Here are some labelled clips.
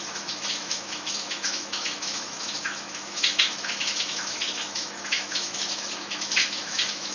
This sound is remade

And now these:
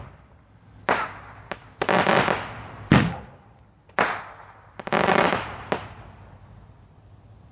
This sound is recorded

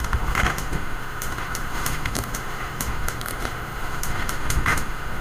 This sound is remade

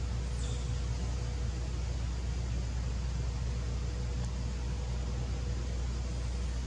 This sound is recorded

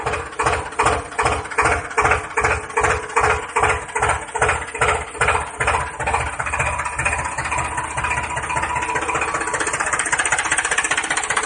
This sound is recorded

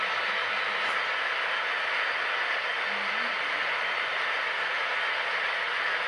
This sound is recorded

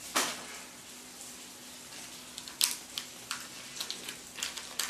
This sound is recorded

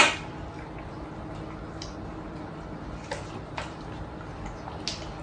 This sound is recorded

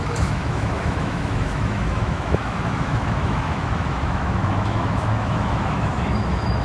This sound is remade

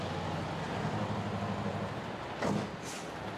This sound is recorded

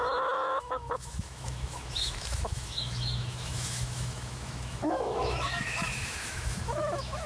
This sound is remade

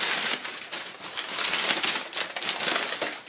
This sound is recorded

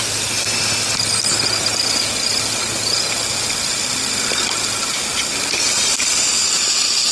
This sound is recorded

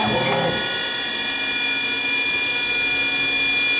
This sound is recorded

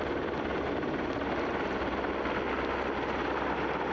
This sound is recorded